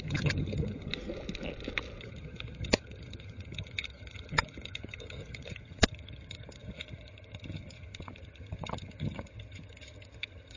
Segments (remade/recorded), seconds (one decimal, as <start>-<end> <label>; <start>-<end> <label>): 0.0-0.9 remade; 0.9-2.0 recorded; 2.0-10.6 remade